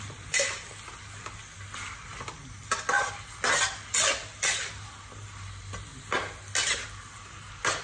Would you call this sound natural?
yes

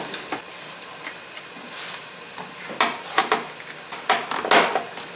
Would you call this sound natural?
yes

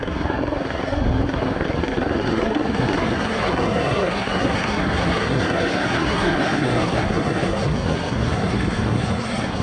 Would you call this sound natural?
no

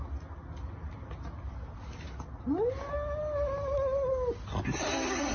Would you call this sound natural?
yes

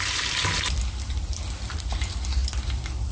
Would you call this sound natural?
no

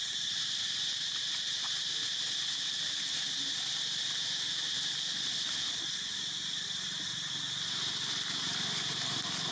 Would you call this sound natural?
yes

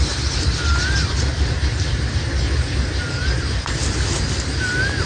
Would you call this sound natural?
yes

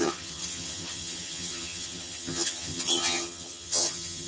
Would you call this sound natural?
no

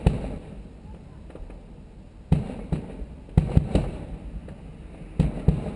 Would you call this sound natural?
yes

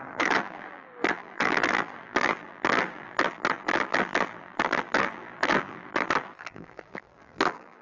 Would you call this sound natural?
no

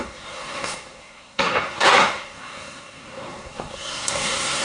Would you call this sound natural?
no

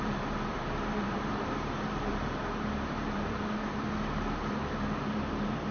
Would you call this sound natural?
no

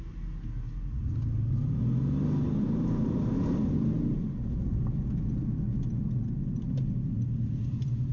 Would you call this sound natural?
yes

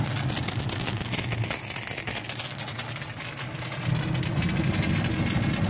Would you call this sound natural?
yes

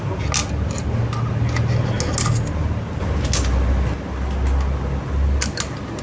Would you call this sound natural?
yes